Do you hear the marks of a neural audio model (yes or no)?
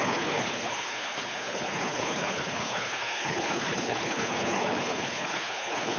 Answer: yes